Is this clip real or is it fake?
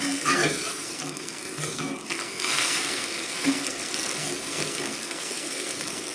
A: fake